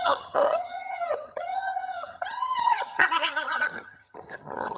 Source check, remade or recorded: remade